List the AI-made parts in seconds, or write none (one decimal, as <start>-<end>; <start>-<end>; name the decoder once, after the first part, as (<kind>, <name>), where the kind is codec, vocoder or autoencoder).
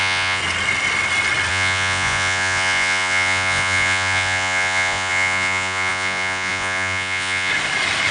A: 0.0-0.4 (vocoder, Vocos); 1.5-7.5